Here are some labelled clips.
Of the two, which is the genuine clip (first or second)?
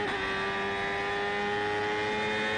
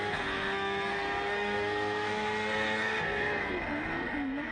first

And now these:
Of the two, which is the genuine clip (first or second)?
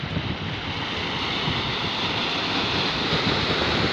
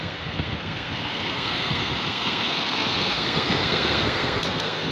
first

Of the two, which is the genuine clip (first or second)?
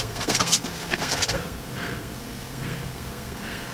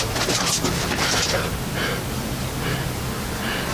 second